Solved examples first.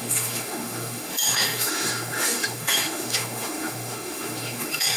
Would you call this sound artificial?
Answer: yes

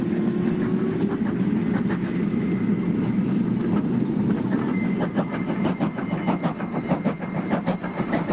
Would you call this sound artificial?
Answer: no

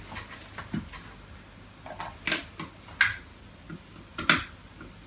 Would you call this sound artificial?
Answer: no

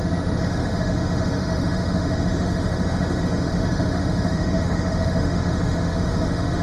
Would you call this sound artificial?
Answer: yes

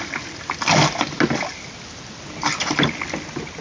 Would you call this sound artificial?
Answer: no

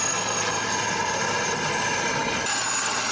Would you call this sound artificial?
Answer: no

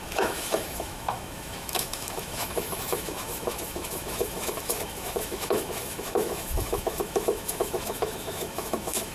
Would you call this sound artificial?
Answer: yes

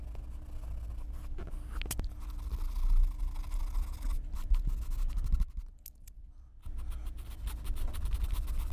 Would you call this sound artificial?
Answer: no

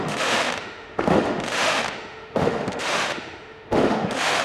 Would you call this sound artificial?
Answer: yes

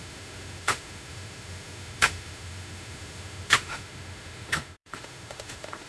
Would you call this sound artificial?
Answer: yes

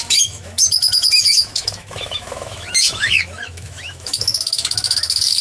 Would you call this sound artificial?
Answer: yes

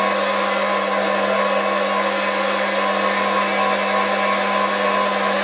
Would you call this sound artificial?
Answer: no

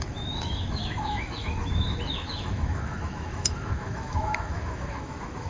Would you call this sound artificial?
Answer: yes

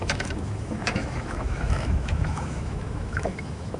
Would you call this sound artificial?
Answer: yes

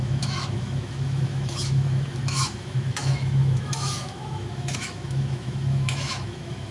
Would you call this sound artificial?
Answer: yes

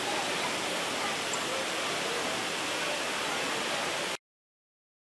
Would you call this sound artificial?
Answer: no